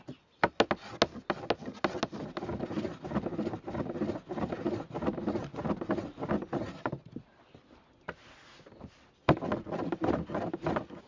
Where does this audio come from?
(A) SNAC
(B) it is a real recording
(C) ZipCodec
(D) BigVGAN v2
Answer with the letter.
B